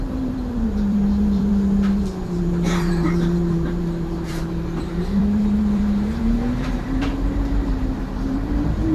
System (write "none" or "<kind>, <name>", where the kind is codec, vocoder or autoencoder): vocoder, BigVGAN v2